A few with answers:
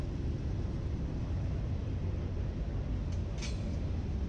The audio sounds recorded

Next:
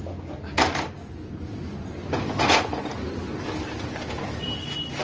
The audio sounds recorded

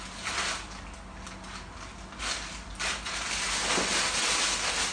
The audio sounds recorded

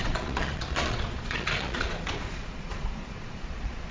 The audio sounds remade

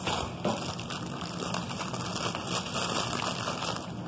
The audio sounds recorded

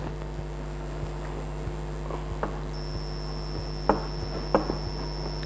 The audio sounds recorded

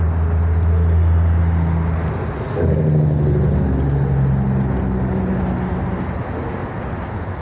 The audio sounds recorded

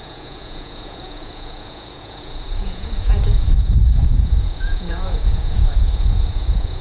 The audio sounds remade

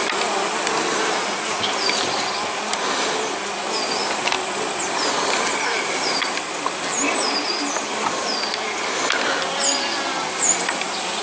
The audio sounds recorded